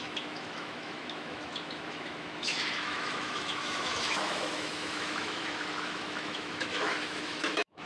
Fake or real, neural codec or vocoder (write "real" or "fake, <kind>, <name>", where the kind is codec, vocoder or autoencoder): fake, autoencoder, DAC-VAE